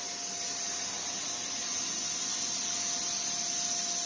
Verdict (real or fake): real